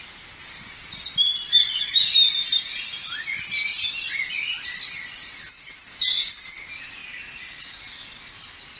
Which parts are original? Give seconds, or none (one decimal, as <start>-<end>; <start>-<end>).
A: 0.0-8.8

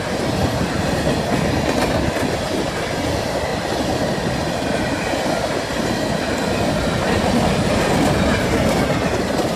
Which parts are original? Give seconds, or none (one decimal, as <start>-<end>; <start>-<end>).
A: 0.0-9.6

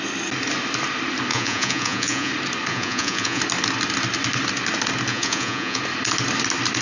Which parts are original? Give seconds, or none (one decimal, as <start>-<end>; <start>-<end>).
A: 0.0-1.3; 2.3-2.7; 3.4-5.1; 5.8-6.8

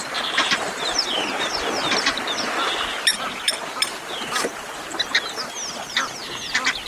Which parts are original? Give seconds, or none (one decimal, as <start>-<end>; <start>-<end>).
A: 2.2-3.1; 3.8-6.9